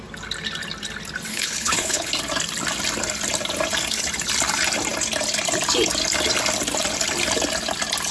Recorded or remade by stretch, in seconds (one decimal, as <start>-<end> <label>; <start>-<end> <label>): 0.0-1.3 recorded; 1.3-2.1 remade; 2.1-8.1 recorded

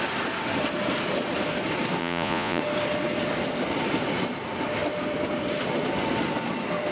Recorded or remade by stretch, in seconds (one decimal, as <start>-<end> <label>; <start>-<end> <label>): 0.0-2.0 recorded; 2.0-2.6 remade; 2.6-6.9 recorded

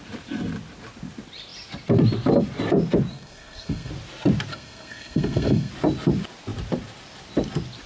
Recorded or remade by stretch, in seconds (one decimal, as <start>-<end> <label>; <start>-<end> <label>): 0.0-3.1 recorded; 3.1-3.9 remade; 3.9-4.5 recorded; 4.5-5.7 remade; 5.7-7.9 recorded

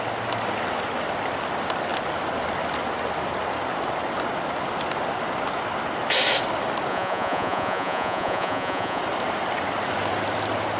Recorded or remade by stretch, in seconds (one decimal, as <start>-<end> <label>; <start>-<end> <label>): 0.0-6.9 recorded; 6.9-9.0 remade; 9.0-10.8 recorded

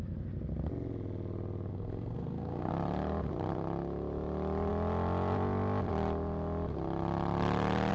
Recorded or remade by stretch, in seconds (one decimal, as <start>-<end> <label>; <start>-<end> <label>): 0.0-1.7 recorded; 1.7-2.7 remade; 2.7-7.9 recorded

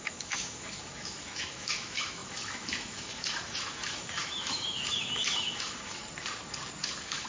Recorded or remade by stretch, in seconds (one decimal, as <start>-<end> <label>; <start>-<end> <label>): 0.0-6.0 remade; 6.0-6.8 recorded; 6.8-7.3 remade

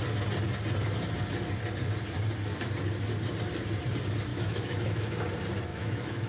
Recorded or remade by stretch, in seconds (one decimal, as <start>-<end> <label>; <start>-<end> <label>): 0.0-4.3 recorded; 4.3-5.2 remade; 5.2-5.7 recorded; 5.7-6.3 remade